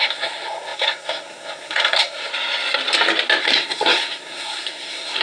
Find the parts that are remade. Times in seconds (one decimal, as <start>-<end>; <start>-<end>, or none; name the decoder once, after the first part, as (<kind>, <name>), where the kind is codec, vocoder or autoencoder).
0.0-2.3 (codec, SNAC); 3.4-5.2